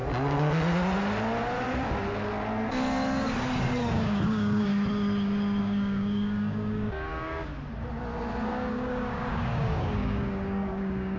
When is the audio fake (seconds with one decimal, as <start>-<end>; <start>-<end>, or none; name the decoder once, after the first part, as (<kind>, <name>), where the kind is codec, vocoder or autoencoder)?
3.8-4.7 (codec, DAC); 5.6-7.5; 8.5-11.2